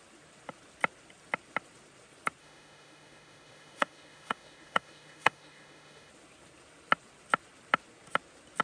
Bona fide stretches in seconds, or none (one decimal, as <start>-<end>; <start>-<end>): 0.0-2.4; 6.1-8.6